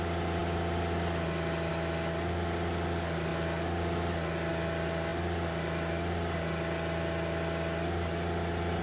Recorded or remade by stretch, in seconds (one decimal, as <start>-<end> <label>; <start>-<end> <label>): 0.0-8.8 recorded